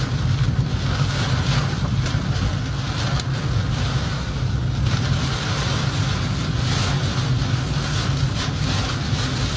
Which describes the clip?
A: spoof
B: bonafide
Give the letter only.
B